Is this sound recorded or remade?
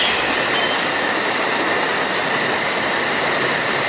recorded